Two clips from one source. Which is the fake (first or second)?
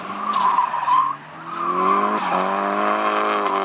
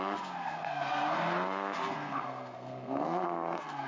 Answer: second